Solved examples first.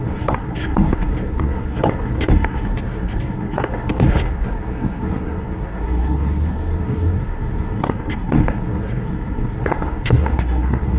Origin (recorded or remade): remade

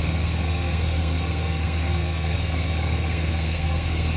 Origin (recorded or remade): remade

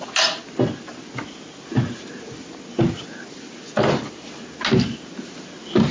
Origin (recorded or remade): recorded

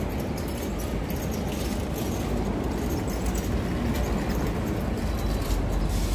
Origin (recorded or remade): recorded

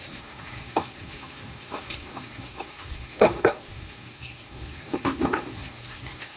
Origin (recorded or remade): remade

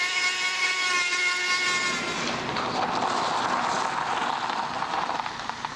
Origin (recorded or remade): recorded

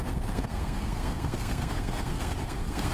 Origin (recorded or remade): remade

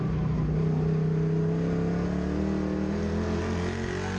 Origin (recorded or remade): recorded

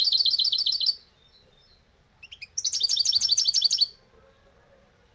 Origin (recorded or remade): recorded